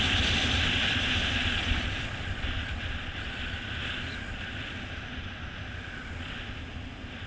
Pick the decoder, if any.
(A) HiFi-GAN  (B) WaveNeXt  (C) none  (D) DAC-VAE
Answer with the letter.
C